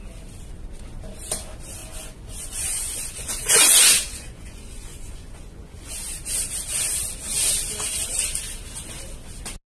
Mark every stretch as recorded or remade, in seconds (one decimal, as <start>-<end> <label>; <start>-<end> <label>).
0.0-1.8 recorded; 1.8-5.9 remade; 5.9-9.7 recorded

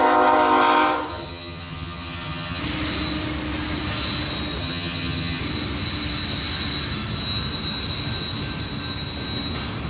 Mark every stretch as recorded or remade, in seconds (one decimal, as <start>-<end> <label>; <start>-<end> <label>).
0.0-1.1 recorded; 1.1-2.6 remade; 2.6-4.6 recorded; 4.6-5.4 remade; 5.4-9.9 recorded

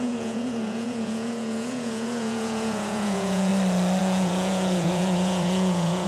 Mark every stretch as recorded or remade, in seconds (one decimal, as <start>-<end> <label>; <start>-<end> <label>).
0.0-3.5 remade; 3.5-4.0 recorded; 4.0-6.1 remade

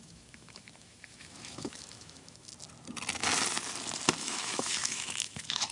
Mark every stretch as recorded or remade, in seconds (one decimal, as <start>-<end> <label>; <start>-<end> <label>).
0.0-2.5 remade; 2.5-4.2 recorded; 4.2-5.7 remade

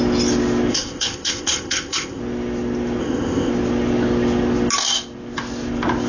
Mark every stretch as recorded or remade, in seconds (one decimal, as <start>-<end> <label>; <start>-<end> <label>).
0.0-0.7 recorded; 0.7-2.2 remade; 2.2-3.0 recorded; 3.0-3.5 remade; 3.5-6.1 recorded

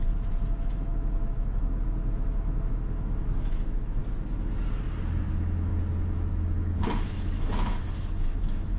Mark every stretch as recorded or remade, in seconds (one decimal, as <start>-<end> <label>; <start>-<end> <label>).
0.0-4.0 remade; 4.0-5.3 recorded; 5.3-5.7 remade; 5.7-6.3 recorded; 6.3-8.8 remade